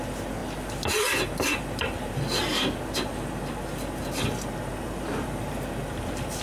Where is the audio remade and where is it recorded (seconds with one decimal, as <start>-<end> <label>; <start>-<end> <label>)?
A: 0.0-6.4 recorded

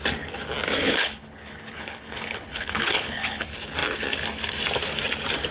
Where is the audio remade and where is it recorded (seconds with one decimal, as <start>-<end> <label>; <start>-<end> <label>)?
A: 0.0-0.8 recorded; 0.8-3.4 remade; 3.4-5.5 recorded

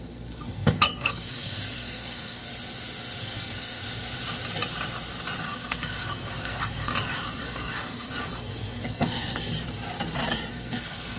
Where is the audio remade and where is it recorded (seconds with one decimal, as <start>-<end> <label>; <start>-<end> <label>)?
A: 0.0-2.5 remade; 2.5-3.2 recorded; 3.2-3.8 remade; 3.8-5.4 recorded; 5.4-6.9 remade; 6.9-7.4 recorded; 7.4-9.5 remade; 9.5-10.5 recorded; 10.5-11.2 remade

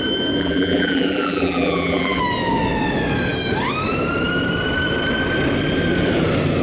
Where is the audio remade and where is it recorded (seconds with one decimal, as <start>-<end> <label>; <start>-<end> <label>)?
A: 0.0-0.4 recorded; 0.4-2.2 remade; 2.2-6.6 recorded

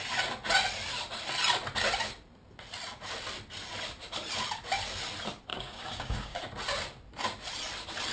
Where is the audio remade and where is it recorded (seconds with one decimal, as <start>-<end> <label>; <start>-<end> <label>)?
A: 0.0-5.5 recorded; 5.5-6.4 remade; 6.4-8.1 recorded